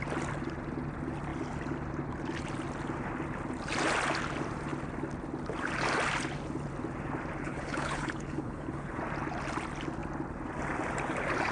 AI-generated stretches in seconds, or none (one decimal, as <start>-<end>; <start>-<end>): 7.4-9.0